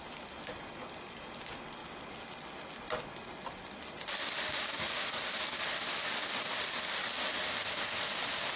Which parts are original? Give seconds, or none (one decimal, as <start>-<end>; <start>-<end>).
0.0-8.6